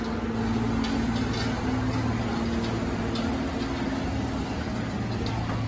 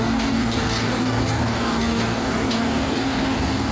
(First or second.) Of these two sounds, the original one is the first